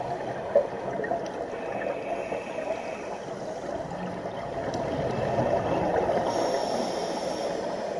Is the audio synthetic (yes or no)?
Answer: no